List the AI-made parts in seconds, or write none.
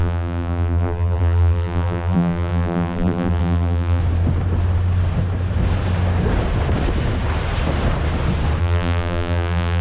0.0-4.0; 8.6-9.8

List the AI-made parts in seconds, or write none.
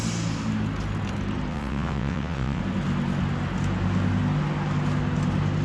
1.5-2.6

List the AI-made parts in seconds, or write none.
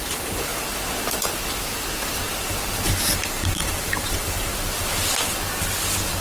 0.0-0.5; 2.9-4.5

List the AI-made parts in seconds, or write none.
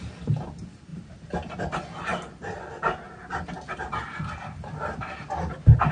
none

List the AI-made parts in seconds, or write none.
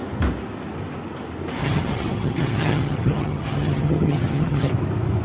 1.6-4.7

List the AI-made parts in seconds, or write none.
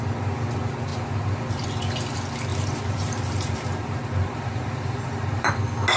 2.5-5.5